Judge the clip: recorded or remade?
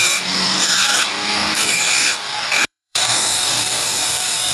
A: remade